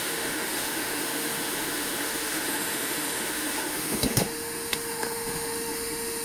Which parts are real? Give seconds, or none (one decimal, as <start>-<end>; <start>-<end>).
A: none